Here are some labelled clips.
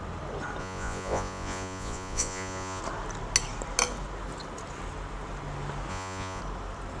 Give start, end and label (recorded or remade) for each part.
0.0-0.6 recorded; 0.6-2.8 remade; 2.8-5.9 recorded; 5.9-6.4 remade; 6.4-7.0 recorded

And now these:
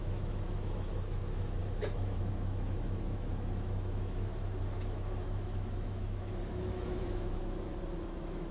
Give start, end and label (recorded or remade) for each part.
0.0-7.4 remade; 7.4-7.9 recorded; 7.9-8.5 remade

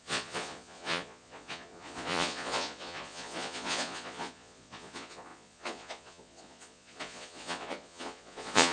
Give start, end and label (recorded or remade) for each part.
0.0-8.7 remade

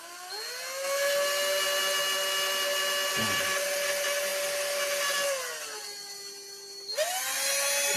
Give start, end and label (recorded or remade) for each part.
0.0-8.0 recorded

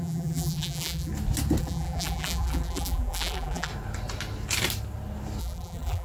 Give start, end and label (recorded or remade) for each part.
0.0-1.1 remade; 1.1-1.6 recorded; 1.6-3.7 remade; 3.7-5.4 recorded; 5.4-6.0 remade

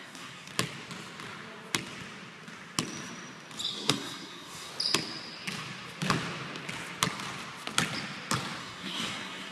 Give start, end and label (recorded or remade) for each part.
0.0-0.5 remade; 0.5-3.7 recorded; 3.7-4.7 remade; 4.7-8.6 recorded; 8.6-9.5 remade